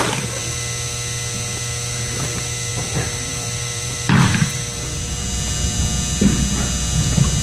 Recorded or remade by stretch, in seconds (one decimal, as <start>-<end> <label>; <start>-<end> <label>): 0.0-2.7 recorded; 2.7-5.1 remade; 5.1-7.4 recorded